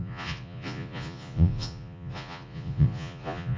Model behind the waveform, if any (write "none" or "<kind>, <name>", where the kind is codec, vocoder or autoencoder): vocoder, Vocos